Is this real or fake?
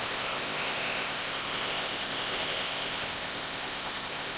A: fake